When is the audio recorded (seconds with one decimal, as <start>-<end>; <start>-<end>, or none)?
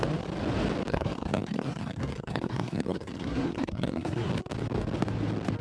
0.0-0.9; 4.3-5.6